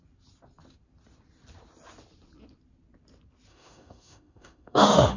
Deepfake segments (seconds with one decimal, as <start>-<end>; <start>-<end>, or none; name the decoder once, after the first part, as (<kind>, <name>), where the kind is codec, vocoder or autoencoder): 3.5-5.2 (autoencoder, DAC-VAE)